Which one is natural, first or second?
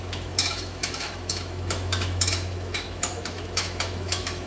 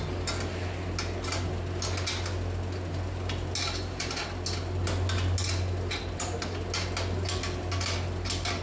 second